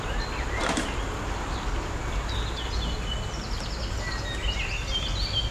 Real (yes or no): yes